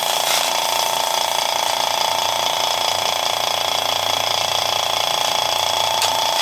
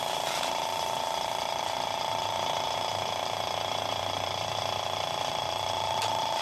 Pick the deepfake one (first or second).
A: second